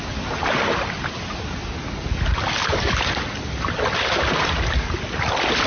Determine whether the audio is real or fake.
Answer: real